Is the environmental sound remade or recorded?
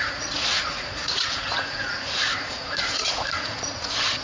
remade